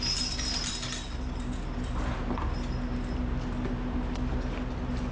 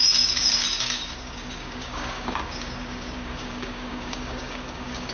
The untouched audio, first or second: first